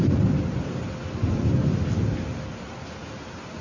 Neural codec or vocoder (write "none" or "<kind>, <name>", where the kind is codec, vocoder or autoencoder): none